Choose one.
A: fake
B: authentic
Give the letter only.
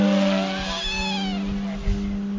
B